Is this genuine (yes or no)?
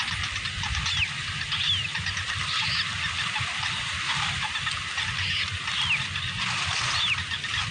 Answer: yes